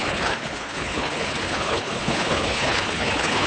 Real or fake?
fake